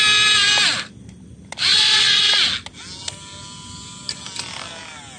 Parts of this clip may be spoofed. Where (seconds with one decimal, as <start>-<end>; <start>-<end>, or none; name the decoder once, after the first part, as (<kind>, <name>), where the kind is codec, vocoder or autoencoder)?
1.7-2.2 (vocoder, Vocos)